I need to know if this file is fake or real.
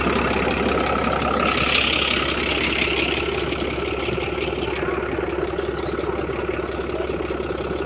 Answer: real